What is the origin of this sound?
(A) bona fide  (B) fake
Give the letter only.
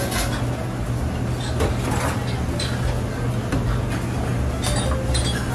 A